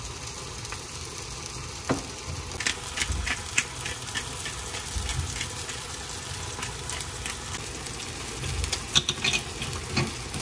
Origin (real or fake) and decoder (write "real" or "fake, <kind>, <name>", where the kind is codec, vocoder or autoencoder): real